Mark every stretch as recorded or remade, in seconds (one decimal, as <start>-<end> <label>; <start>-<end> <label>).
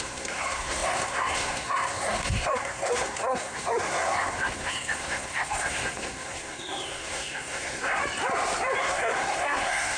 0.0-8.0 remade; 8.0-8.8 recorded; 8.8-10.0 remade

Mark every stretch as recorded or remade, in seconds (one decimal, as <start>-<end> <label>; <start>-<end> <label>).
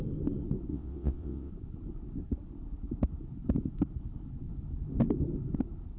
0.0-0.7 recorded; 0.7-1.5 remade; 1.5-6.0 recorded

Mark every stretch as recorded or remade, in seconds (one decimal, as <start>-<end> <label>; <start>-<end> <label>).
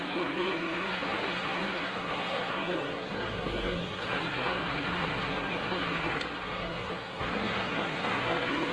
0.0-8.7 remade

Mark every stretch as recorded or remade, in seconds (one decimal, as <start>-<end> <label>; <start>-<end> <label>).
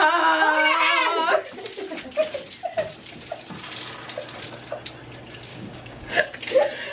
0.0-5.5 recorded; 5.5-6.2 remade; 6.2-6.9 recorded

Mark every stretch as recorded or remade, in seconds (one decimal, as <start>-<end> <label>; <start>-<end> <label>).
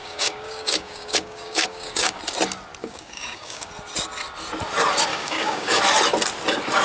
0.0-2.2 remade; 2.2-2.8 recorded; 2.8-3.7 remade; 3.7-5.1 recorded; 5.1-5.8 remade; 5.8-6.8 recorded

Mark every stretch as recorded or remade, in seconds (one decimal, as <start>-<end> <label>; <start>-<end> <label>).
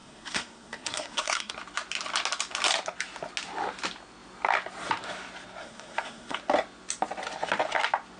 0.0-1.5 remade; 1.5-5.6 recorded; 5.6-6.4 remade; 6.4-8.2 recorded